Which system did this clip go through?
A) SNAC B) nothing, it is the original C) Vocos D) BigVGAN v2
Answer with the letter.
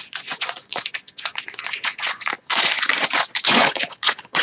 C